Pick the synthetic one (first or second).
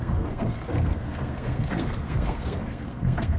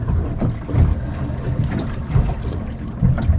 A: first